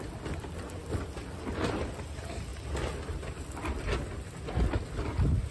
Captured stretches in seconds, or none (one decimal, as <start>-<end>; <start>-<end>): 0.0-5.5